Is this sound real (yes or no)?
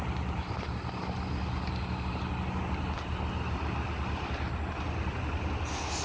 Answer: yes